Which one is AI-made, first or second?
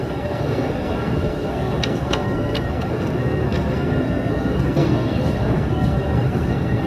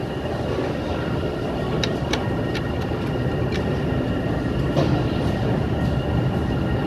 first